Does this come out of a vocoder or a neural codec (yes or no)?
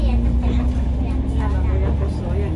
no